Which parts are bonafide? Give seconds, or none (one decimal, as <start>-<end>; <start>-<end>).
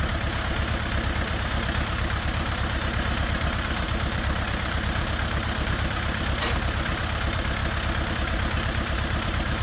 7.6-8.1